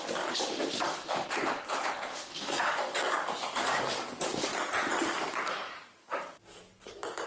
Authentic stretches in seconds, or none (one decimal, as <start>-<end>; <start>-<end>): 4.5-5.1